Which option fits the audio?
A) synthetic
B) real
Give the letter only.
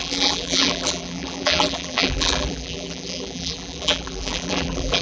A